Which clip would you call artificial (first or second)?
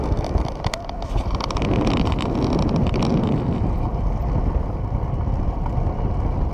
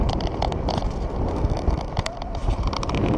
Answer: second